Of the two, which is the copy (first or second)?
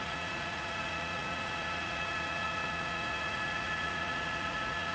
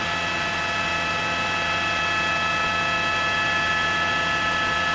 first